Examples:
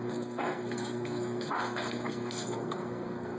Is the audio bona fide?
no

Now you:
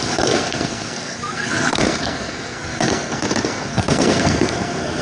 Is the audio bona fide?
no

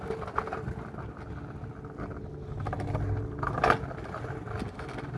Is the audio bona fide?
yes